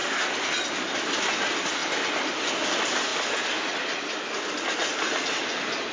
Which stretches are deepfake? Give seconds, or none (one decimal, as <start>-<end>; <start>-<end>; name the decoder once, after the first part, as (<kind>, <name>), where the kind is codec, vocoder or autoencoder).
none